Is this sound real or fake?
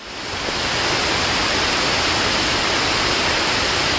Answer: real